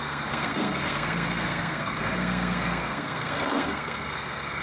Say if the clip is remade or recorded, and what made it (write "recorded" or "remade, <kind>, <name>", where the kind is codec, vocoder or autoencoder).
remade, codec, SNAC